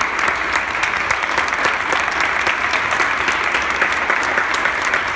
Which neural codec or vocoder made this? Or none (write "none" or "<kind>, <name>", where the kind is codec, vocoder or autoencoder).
none